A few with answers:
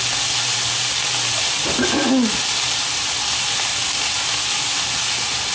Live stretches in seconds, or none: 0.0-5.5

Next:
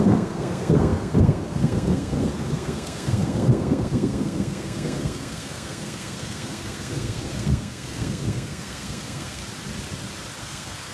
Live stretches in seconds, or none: 9.4-10.4

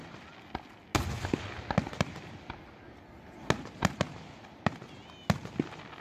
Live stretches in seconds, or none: 0.0-6.0

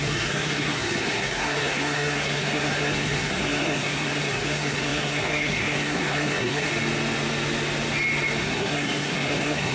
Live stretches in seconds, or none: 6.7-8.4